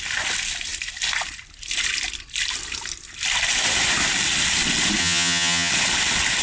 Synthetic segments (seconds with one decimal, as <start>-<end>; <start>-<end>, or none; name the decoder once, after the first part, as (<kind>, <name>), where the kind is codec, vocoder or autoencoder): 5.0-5.7 (vocoder, HiFi-GAN)